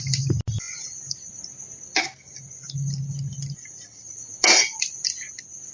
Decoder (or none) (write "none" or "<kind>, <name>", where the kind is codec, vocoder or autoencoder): none